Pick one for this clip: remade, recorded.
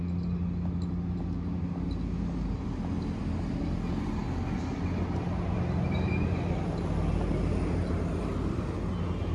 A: recorded